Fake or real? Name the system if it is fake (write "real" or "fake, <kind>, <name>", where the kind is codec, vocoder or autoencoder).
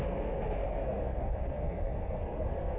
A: fake, codec, SNAC